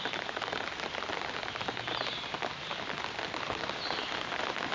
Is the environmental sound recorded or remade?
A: recorded